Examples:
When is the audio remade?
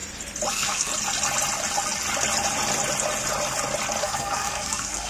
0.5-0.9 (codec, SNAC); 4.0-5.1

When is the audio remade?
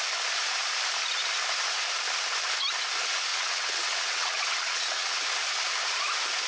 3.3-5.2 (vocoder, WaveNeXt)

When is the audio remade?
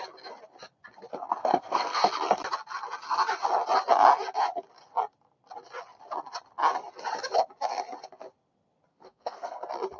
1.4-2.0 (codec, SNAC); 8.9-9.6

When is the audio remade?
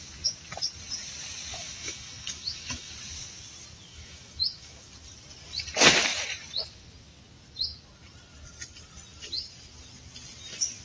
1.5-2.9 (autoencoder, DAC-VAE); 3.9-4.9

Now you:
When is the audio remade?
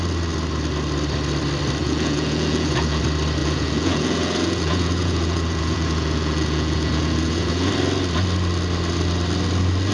1.8-3.0 (vocoder, Vocos); 3.4-7.7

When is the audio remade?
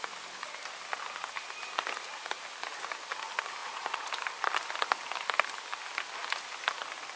3.6-4.1 (vocoder, Vocos)